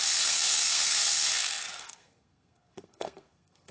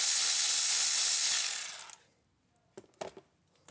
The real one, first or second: second